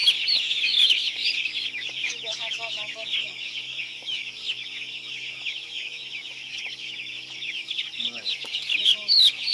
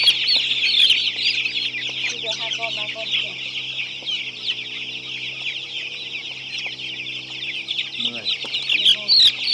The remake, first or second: first